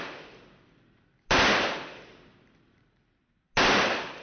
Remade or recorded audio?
recorded